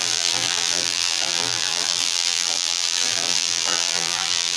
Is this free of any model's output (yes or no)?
no